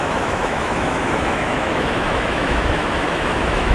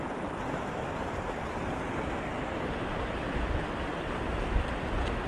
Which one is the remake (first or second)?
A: first